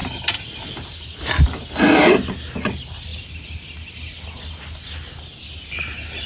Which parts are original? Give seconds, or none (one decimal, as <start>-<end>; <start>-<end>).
0.0-6.3